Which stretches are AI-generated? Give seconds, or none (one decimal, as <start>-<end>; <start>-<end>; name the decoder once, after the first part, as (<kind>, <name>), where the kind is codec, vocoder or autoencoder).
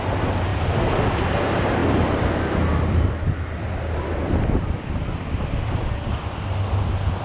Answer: 0.5-1.3 (vocoder, BigVGAN v2); 1.8-6.1